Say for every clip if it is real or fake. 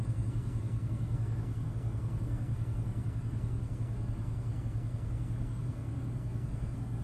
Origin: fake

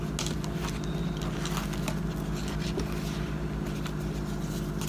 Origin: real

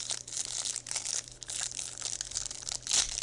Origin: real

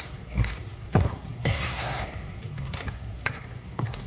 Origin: fake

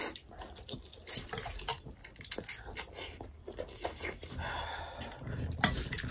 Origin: real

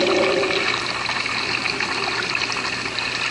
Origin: real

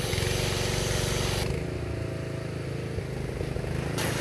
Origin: real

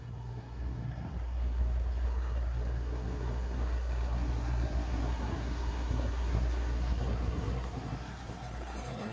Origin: fake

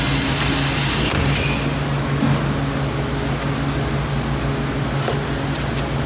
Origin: real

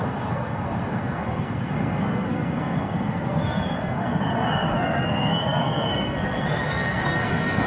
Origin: fake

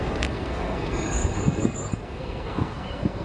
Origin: fake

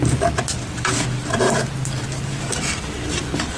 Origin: real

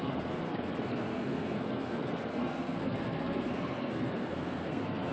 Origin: fake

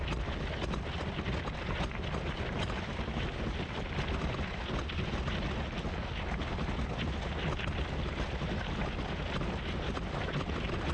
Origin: real